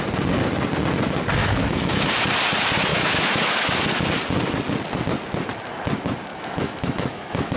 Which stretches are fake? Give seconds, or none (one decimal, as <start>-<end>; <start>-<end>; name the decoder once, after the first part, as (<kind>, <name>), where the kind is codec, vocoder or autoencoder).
1.4-2.1 (autoencoder, DAC-VAE); 2.9-3.8; 6.3-7.6